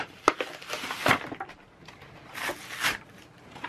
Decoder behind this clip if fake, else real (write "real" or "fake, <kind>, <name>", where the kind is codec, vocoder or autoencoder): real